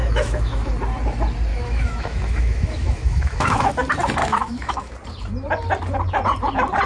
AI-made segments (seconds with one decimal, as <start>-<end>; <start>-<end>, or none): 0.0-0.7; 1.5-3.7; 4.2-4.9